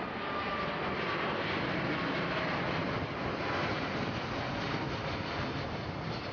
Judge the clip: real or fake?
real